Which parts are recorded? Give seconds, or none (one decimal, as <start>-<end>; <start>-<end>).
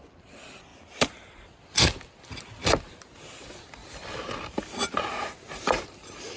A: 0.0-0.7; 1.2-3.8; 5.8-6.4